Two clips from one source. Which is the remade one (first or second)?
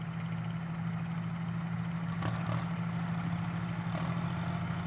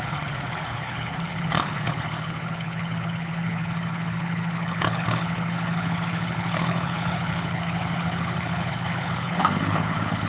second